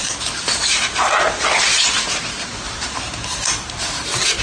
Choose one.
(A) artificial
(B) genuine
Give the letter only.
A